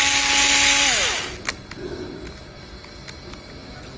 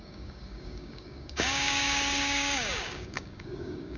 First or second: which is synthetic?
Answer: second